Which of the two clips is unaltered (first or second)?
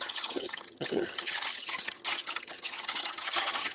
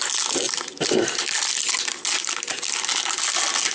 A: second